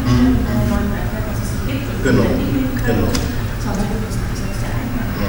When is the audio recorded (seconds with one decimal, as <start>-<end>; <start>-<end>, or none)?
0.0-3.3; 4.5-5.3